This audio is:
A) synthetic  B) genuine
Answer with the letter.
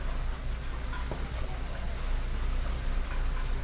B